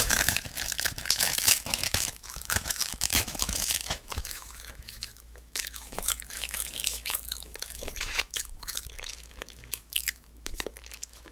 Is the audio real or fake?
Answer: fake